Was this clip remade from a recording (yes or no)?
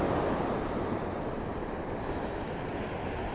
yes